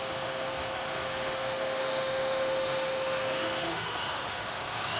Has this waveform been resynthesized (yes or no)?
yes